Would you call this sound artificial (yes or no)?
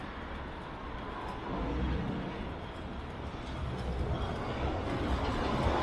no